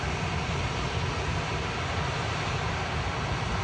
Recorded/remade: recorded